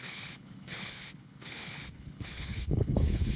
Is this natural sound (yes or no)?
no